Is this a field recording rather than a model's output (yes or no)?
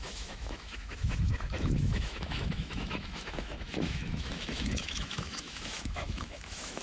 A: no